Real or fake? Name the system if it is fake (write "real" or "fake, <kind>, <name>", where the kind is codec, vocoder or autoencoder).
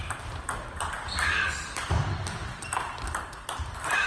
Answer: fake, vocoder, BigVGAN v2